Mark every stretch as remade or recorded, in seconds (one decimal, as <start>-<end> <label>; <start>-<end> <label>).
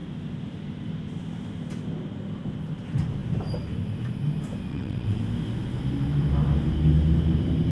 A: 0.0-4.7 recorded; 4.7-5.2 remade; 5.2-7.7 recorded